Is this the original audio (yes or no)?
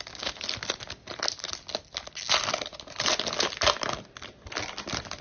yes